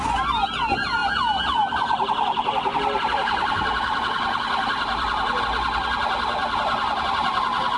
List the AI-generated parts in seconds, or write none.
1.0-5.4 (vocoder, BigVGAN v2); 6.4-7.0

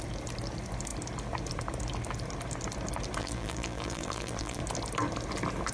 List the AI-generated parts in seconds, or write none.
3.2-4.6 (vocoder, BigVGAN v2)

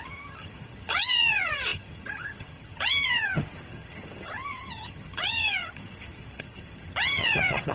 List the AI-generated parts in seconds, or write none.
0.0-7.7 (vocoder, HiFi-GAN)

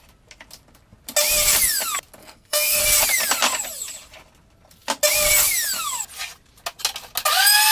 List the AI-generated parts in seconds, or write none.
2.2-2.8 (codec, SNAC)

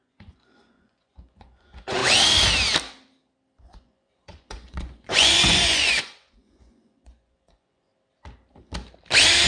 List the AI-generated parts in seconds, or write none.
0.0-2.0 (vocoder, Vocos); 3.6-7.9